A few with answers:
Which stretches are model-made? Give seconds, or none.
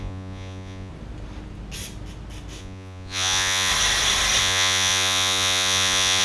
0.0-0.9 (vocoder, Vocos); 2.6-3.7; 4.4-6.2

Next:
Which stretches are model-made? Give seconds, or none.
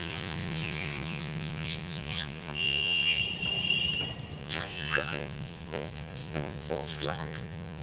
0.0-3.2 (vocoder, Vocos); 4.4-7.8